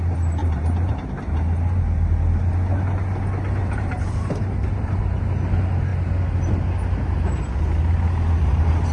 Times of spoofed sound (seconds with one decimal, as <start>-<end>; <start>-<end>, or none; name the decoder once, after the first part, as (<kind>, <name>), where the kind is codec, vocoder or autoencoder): 0.4-0.9 (vocoder, BigVGAN v2); 3.6-5.0